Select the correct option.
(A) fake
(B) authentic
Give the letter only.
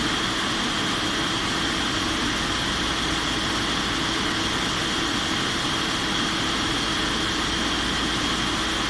B